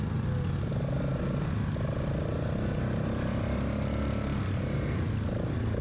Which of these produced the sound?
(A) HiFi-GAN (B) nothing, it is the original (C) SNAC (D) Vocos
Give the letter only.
B